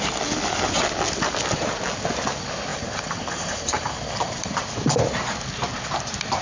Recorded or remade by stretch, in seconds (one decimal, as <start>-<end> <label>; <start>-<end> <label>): 0.0-2.7 recorded; 2.7-4.6 remade; 4.6-6.4 recorded